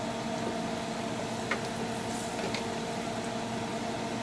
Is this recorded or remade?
recorded